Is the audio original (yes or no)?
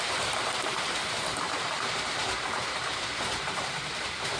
no